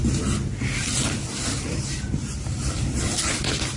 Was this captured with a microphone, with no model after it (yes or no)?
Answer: yes